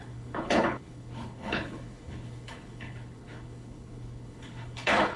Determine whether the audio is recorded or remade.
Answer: remade